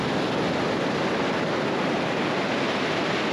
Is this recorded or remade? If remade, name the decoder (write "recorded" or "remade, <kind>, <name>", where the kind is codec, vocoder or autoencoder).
recorded